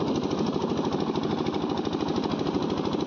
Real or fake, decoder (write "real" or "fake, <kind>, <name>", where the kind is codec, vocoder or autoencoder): real